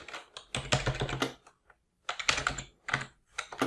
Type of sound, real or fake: real